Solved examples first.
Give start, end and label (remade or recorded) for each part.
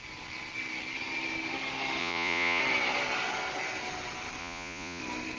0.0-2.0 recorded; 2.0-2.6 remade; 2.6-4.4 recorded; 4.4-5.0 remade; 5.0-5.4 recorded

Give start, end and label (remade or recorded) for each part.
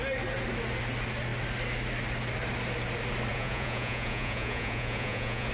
0.0-3.3 recorded; 3.3-5.5 remade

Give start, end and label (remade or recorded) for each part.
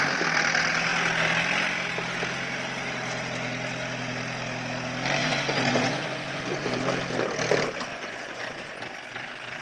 0.0-5.2 recorded; 5.2-6.7 remade; 6.7-7.9 recorded; 7.9-8.8 remade; 8.8-9.6 recorded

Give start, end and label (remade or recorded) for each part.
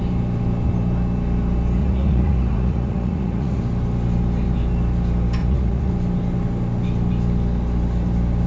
0.0-1.8 recorded; 1.8-3.6 remade; 3.6-5.4 recorded; 5.4-5.9 remade; 5.9-8.5 recorded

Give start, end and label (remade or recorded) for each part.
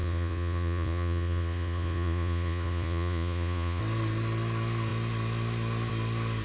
0.0-3.8 remade; 3.8-6.4 recorded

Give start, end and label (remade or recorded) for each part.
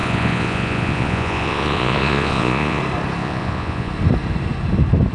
0.0-2.8 remade; 2.8-3.2 recorded; 3.2-3.9 remade; 3.9-5.1 recorded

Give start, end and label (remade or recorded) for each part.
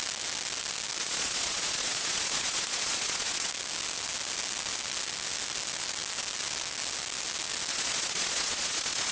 0.0-1.0 recorded; 1.0-3.5 remade; 3.5-7.7 recorded; 7.7-9.1 remade